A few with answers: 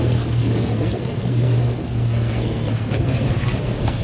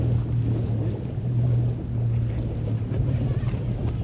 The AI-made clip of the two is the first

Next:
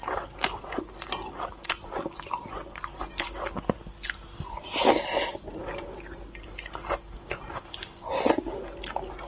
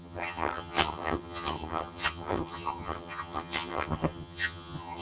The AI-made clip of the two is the second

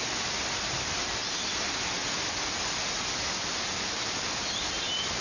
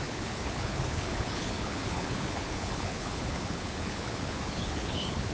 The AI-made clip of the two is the second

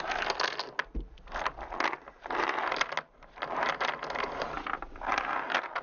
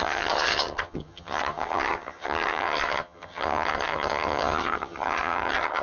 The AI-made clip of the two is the second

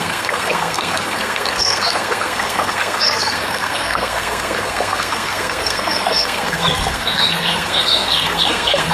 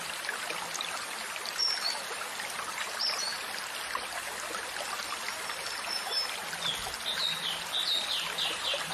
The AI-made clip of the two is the first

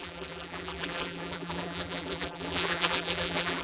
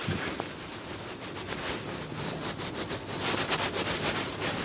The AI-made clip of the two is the first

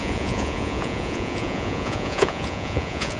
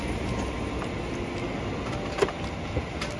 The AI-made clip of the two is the first